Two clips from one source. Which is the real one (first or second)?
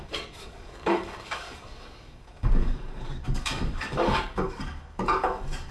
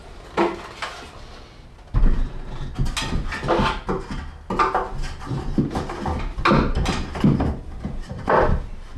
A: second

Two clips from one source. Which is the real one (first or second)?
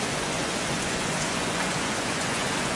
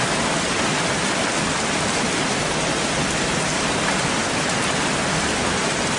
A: second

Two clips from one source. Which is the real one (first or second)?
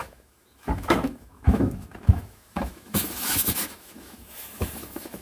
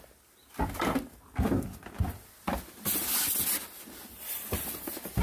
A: second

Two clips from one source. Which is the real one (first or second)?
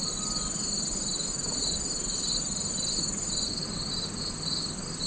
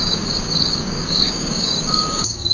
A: first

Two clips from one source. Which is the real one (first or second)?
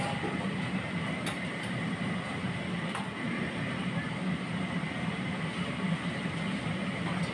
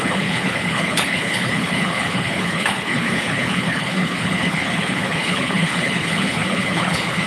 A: first